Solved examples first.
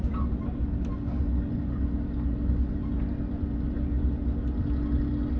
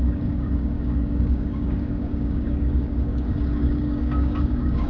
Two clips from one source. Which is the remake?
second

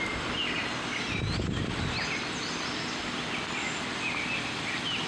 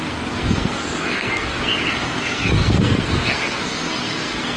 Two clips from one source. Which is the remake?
second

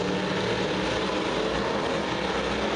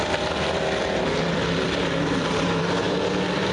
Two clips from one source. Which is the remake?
second